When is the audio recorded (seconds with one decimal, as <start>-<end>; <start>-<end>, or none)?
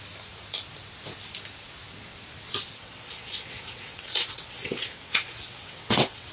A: 0.0-2.8